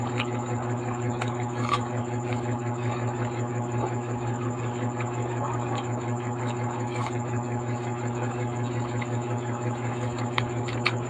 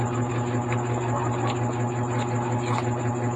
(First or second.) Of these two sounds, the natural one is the second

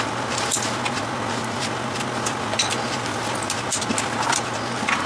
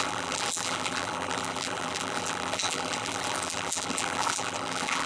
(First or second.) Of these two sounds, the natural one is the first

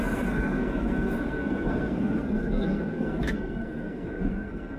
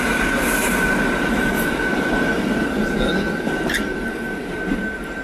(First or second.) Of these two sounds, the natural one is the second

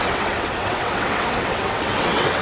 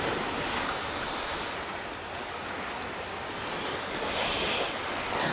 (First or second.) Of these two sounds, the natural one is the second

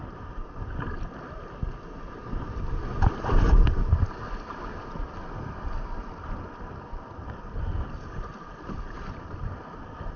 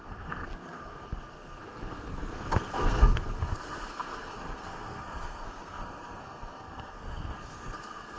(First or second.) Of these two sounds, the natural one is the first